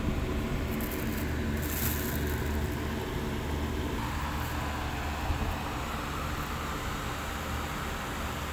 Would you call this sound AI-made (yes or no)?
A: no